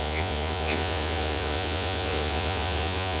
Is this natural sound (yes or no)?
no